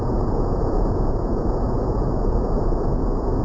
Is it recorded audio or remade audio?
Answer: remade